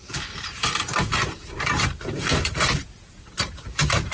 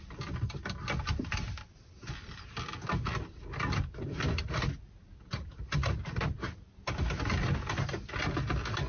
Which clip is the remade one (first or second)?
first